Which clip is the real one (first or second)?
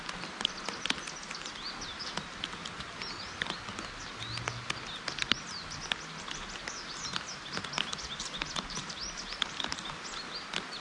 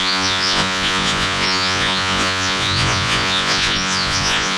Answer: first